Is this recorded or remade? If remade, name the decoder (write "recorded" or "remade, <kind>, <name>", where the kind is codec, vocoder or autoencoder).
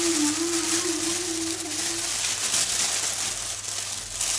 recorded